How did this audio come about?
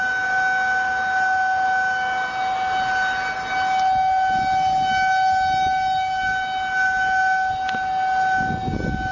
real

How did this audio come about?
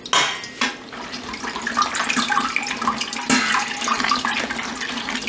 real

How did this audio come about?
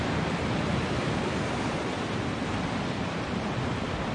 real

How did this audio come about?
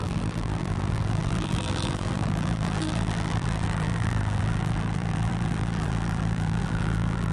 fake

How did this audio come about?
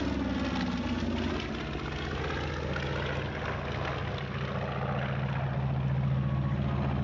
real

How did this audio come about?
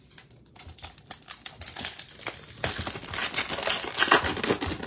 real